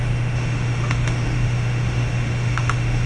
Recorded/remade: remade